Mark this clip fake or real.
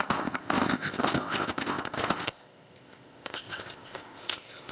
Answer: fake